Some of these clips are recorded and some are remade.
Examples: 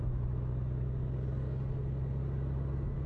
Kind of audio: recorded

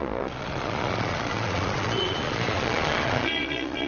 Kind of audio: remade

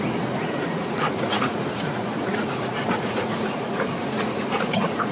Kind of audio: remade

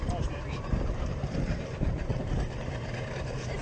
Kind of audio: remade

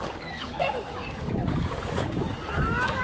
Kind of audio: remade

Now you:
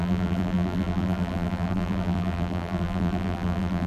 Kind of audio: remade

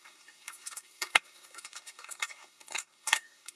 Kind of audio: remade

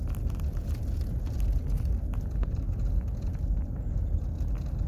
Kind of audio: recorded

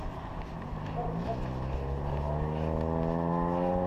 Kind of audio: recorded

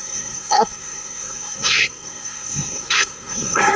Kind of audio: remade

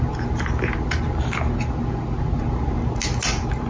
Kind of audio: recorded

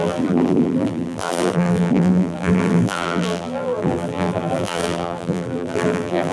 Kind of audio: remade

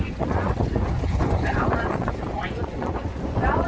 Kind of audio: remade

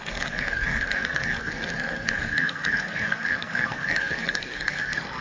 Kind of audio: remade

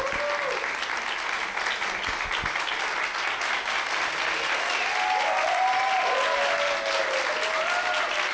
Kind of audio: recorded